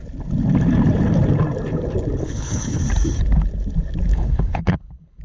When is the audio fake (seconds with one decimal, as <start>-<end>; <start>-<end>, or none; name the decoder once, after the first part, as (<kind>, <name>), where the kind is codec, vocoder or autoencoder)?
2.2-2.8 (codec, HILCodec); 4.1-5.2